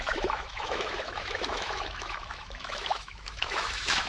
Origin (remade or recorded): remade